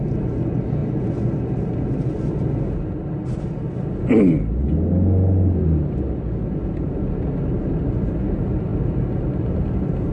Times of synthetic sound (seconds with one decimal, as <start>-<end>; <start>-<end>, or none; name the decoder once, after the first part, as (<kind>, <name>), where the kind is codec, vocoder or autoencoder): none